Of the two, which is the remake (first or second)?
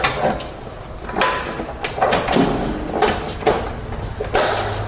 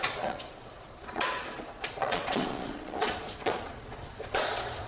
second